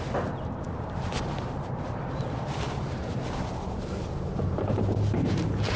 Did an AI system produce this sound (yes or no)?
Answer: yes